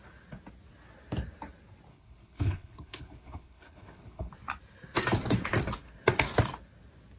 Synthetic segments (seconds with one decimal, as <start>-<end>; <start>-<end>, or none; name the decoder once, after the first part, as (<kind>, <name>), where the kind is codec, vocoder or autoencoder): 1.9-4.3 (codec, HILCodec)

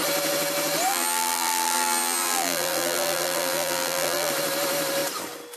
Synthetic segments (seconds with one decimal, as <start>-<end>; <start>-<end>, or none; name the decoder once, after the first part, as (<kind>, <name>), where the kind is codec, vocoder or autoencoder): 0.9-4.3 (vocoder, BigVGAN v2)

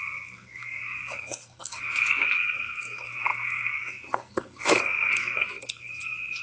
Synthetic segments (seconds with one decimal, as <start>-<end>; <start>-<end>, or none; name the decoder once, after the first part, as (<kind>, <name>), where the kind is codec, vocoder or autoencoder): 0.0-6.4 (codec, SNAC)

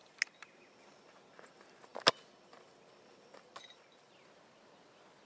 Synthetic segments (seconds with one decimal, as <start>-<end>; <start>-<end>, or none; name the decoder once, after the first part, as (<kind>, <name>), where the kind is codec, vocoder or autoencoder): none